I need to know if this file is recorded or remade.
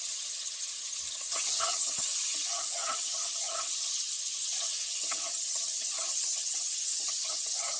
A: remade